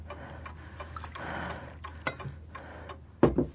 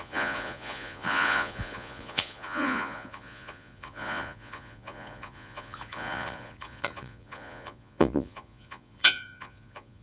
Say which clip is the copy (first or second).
second